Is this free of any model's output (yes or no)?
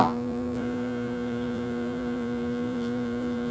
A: no